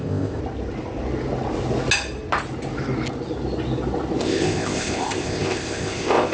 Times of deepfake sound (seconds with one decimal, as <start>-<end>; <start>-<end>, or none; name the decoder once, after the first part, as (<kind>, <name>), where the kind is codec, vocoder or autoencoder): 0.0-0.4 (codec, ZipCodec); 4.2-6.3